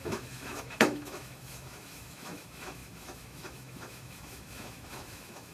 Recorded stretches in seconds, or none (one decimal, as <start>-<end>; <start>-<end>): none